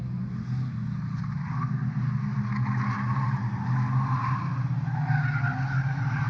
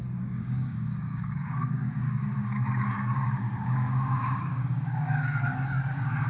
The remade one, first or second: second